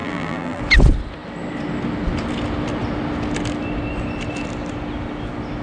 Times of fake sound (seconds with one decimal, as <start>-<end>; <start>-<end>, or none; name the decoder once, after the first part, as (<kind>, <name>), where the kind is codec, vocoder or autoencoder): 0.0-0.6 (vocoder, BigVGAN v2)

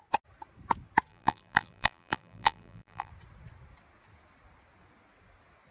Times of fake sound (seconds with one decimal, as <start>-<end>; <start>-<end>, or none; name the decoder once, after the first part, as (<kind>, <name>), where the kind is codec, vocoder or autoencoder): 1.1-3.1 (vocoder, BigVGAN v2)

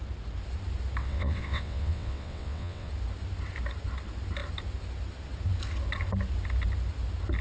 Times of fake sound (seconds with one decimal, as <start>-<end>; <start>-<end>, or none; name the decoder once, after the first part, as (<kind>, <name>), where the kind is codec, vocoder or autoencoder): 1.0-2.9 (vocoder, WaveNeXt)

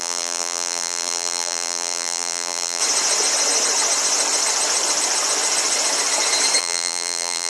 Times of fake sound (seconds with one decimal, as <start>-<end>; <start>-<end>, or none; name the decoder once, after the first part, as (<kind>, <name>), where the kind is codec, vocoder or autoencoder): 0.0-2.8 (vocoder, BigVGAN v2); 6.6-7.5

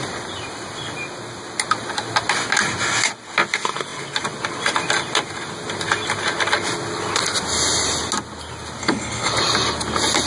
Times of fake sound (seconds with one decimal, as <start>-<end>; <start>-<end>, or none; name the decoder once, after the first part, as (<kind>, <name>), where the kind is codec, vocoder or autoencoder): 8.8-9.3 (codec, HILCodec)